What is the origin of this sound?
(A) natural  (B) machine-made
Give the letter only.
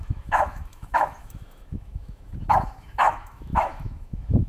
B